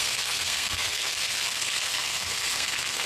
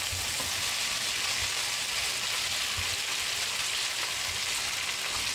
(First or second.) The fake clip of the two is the first